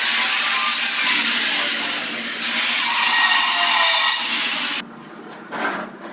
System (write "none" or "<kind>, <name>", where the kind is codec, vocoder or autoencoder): none